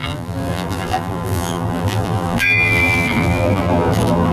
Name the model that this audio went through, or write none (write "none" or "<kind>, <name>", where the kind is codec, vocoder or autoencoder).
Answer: vocoder, BigVGAN v2